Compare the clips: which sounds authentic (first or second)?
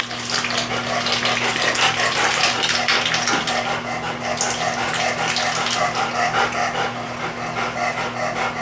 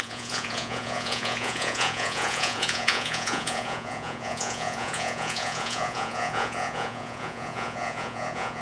first